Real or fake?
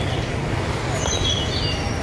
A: real